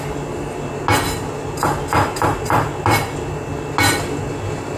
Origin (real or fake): real